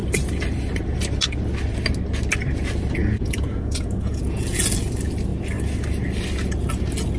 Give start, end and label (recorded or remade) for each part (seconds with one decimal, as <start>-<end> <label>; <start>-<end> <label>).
0.0-3.0 recorded; 3.0-4.6 remade; 4.6-7.2 recorded